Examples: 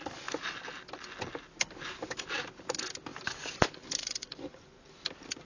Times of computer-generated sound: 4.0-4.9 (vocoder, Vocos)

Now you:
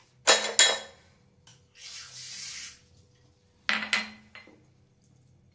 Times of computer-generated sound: none

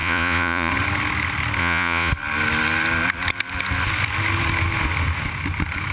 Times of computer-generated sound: 0.0-0.7 (vocoder, Vocos); 1.6-2.1

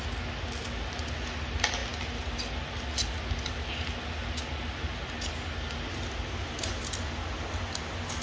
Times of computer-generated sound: none

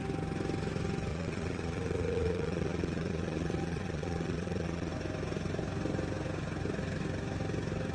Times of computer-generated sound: 1.1-4.9 (vocoder, Vocos)

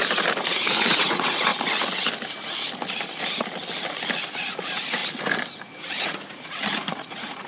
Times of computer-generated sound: 0.8-1.5 (vocoder, Vocos); 4.5-5.0; 5.6-7.5

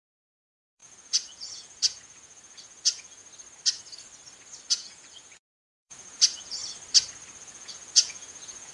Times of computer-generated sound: 0.0-3.2 (vocoder, Vocos); 4.6-6.6; 7.4-8.7